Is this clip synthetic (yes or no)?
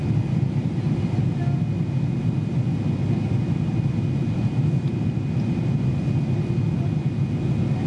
no